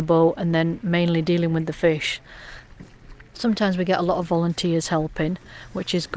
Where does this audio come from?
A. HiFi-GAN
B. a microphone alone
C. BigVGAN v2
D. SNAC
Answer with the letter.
B